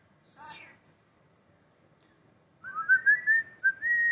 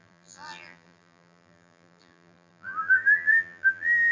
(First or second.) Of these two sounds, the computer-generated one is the second